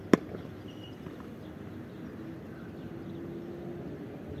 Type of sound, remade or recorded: recorded